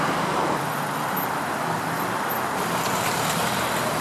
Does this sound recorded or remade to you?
remade